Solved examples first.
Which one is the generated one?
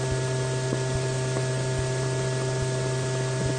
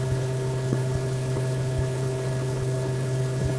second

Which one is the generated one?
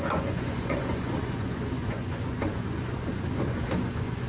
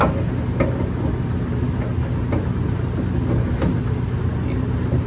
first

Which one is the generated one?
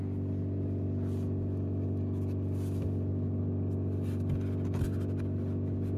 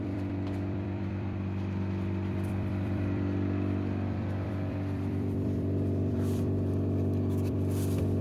second